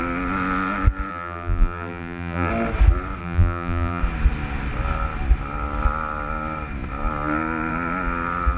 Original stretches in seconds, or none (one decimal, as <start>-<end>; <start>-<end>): 0.0-1.1; 2.5-3.2; 4.0-8.6